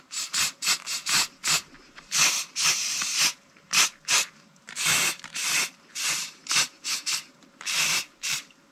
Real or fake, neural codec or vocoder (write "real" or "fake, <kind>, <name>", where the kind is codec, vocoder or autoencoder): fake, vocoder, BigVGAN v2